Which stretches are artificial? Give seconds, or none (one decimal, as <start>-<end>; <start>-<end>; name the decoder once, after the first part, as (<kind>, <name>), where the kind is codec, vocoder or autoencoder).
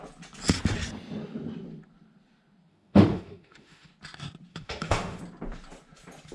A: 2.7-3.9 (autoencoder, DAC-VAE); 4.5-5.2